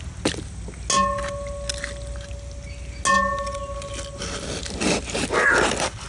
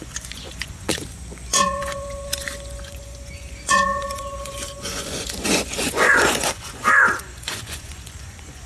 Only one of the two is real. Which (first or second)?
first